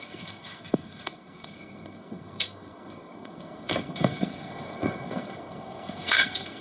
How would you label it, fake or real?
fake